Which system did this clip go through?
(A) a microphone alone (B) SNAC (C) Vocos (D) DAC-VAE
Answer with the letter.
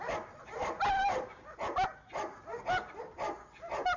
A